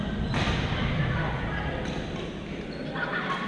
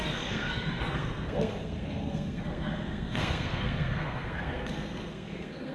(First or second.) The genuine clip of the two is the first